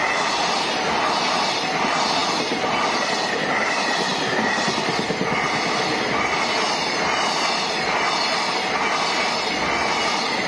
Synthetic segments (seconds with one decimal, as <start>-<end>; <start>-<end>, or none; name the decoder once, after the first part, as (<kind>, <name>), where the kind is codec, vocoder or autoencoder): none